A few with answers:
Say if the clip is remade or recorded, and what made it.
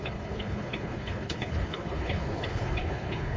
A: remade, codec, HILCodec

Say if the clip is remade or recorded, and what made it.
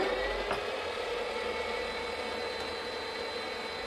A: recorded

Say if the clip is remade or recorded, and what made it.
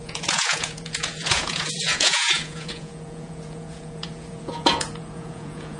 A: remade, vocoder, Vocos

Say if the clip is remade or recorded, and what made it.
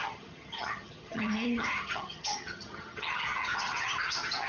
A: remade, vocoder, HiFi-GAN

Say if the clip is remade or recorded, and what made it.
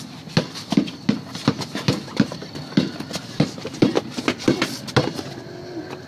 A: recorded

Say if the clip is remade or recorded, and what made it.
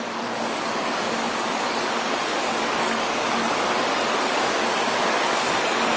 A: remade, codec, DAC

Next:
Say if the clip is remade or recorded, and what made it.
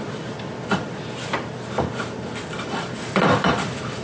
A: remade, vocoder, BigVGAN v2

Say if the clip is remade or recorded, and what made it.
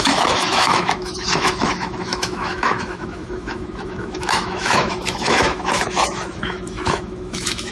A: remade, autoencoder, DAC-VAE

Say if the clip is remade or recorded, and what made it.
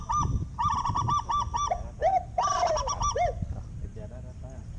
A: recorded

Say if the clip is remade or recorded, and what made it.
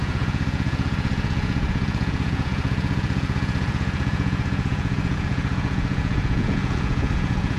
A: remade, vocoder, Vocos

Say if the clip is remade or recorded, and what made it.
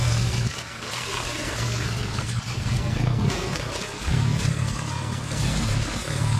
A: remade, codec, SNAC